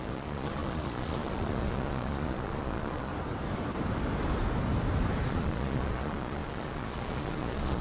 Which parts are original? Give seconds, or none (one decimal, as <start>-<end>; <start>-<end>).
3.1-5.3